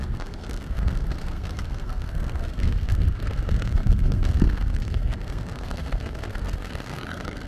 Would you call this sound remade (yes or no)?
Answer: yes